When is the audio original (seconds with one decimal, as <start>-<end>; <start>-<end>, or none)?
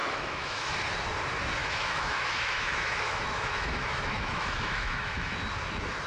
0.7-1.6; 5.3-6.1